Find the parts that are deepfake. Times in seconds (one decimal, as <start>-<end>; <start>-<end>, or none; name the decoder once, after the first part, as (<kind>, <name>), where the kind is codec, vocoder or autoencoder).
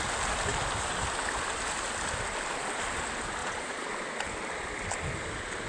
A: 3.4-3.9 (vocoder, Vocos)